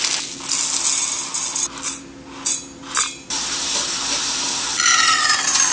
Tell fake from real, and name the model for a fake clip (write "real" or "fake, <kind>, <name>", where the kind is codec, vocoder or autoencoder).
real